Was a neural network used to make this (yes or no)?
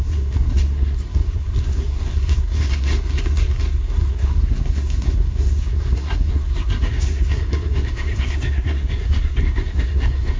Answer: yes